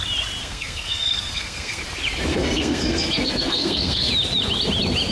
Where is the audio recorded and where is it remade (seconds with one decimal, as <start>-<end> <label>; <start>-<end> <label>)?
0.0-0.4 recorded; 0.4-1.8 remade; 1.8-2.3 recorded; 2.3-4.1 remade; 4.1-5.1 recorded